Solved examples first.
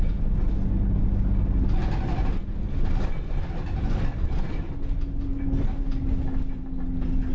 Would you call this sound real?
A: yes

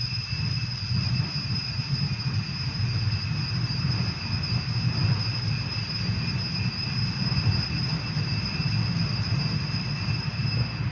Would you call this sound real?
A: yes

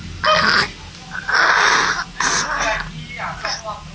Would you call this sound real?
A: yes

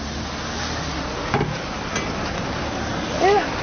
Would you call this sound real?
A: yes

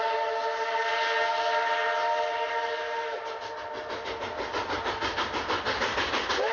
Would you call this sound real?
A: yes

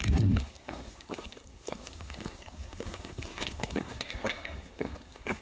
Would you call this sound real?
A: no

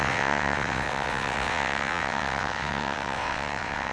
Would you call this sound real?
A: no